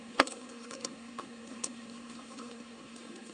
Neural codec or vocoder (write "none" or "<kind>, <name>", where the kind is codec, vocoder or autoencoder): codec, SNAC